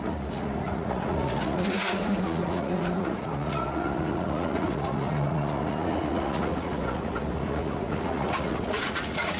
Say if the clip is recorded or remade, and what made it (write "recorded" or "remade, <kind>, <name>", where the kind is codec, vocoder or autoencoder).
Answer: remade, vocoder, Vocos